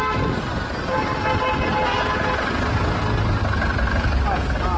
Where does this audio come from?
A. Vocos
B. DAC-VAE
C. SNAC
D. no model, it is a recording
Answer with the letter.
D